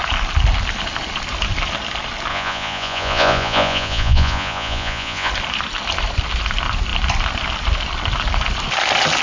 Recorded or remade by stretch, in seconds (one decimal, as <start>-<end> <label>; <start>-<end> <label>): 0.0-2.3 recorded; 2.3-5.3 remade; 5.3-9.2 recorded